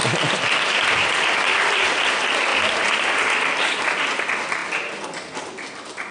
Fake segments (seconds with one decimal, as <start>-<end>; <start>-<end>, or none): 0.0-2.0; 2.5-3.8